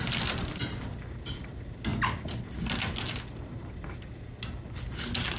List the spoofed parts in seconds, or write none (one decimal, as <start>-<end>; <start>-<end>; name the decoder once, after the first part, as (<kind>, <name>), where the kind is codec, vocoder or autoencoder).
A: none